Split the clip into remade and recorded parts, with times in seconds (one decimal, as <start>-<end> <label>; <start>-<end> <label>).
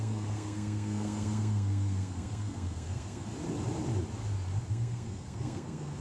0.0-3.3 remade; 3.3-4.7 recorded; 4.7-6.0 remade